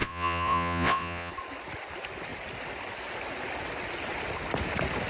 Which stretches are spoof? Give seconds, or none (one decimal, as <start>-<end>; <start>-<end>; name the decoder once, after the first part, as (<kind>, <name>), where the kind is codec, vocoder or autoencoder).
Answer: 0.0-1.3 (vocoder, Vocos)